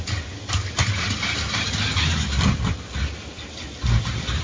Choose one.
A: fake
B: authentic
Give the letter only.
B